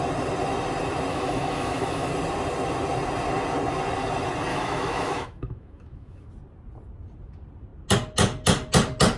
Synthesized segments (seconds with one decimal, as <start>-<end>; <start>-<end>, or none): 1.1-2.1; 4.5-6.3